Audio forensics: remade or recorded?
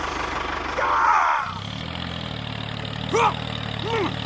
recorded